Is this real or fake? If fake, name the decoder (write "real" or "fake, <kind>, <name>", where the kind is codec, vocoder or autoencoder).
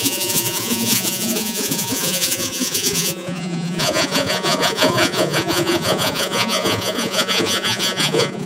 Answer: fake, vocoder, Vocos